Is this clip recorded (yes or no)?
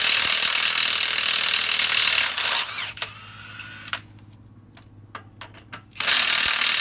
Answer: yes